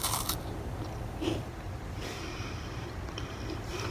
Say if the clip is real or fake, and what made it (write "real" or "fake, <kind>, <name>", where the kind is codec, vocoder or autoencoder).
fake, vocoder, BigVGAN v2